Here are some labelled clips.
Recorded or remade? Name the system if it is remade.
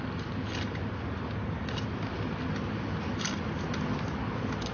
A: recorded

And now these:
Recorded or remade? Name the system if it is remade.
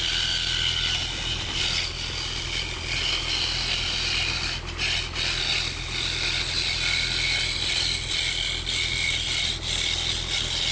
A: recorded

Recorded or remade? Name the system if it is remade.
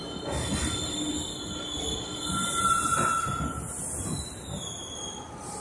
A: recorded